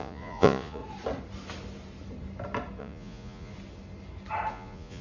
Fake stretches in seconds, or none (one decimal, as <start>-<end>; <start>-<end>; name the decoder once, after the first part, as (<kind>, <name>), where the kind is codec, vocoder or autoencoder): 0.0-0.8 (vocoder, Vocos); 2.8-3.5; 4.5-5.0